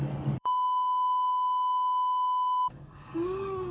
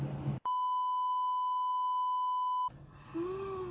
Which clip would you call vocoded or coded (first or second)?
first